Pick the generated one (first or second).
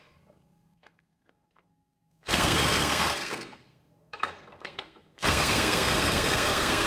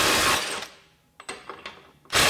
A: first